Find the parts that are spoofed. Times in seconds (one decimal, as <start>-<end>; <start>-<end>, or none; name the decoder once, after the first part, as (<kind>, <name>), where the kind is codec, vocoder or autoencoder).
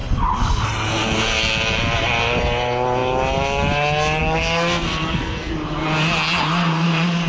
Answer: 4.2-5.5 (codec, SNAC)